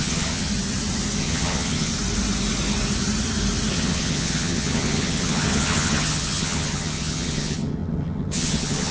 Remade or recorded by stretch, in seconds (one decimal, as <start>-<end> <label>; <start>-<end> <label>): 0.0-0.5 remade; 0.5-1.2 recorded; 1.2-1.9 remade; 1.9-3.7 recorded; 3.7-8.9 remade